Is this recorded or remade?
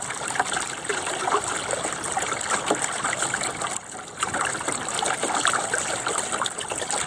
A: recorded